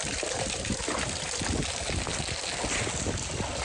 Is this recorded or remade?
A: recorded